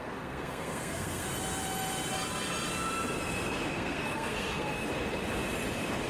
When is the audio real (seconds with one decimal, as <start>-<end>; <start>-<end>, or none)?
1.3-3.7; 4.7-6.1